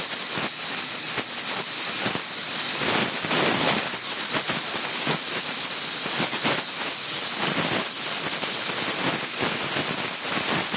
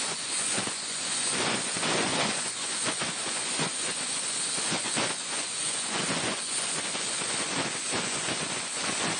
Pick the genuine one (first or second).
first